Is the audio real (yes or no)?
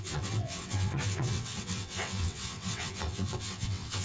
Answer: no